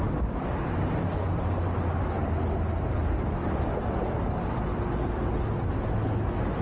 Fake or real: real